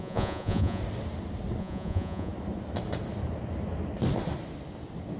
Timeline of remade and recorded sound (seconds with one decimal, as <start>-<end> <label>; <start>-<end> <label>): 0.0-0.8 remade; 0.8-1.6 recorded; 1.6-2.3 remade; 2.3-5.2 recorded